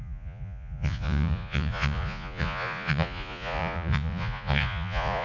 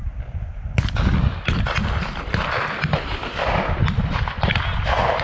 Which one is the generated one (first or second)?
first